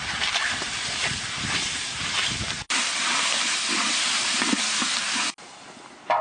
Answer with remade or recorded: recorded